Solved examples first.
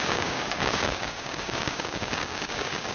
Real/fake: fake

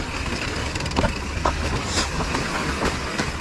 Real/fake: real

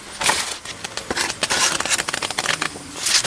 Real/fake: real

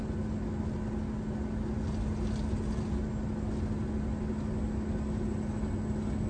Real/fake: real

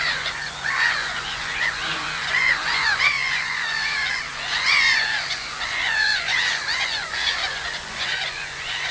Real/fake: fake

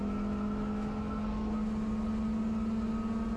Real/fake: real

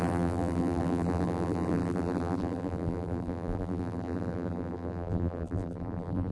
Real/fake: fake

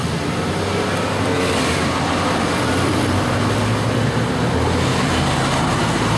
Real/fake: real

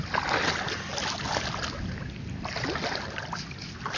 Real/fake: real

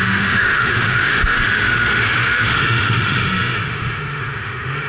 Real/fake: fake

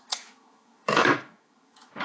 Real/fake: fake